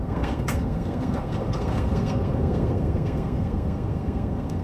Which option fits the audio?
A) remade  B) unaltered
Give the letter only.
A